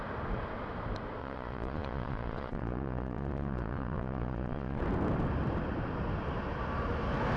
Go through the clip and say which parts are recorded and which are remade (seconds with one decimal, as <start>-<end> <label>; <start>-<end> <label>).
0.0-1.2 recorded; 1.2-4.8 remade; 4.8-7.4 recorded